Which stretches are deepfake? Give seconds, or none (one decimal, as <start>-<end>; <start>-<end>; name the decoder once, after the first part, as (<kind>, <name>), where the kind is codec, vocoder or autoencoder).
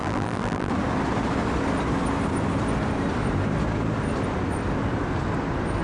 0.0-0.7 (vocoder, BigVGAN v2)